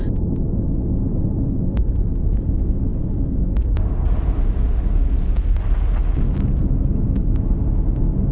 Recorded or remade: recorded